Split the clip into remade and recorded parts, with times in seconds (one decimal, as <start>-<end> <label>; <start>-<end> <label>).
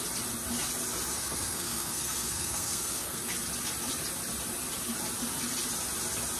0.0-1.1 recorded; 1.1-3.2 remade; 3.2-6.4 recorded